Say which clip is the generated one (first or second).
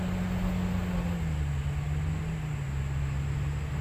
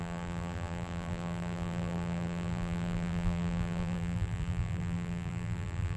second